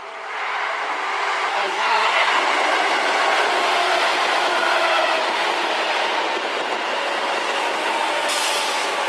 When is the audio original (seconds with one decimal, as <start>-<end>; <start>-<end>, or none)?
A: 0.0-1.5; 2.3-9.1